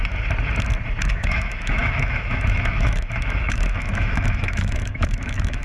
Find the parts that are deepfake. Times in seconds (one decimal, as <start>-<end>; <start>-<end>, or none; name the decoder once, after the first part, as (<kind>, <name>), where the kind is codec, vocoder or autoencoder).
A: 1.1-5.6 (autoencoder, DAC-VAE)